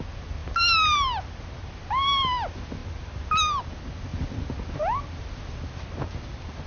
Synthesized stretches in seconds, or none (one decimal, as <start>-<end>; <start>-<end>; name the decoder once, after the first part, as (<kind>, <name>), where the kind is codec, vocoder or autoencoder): none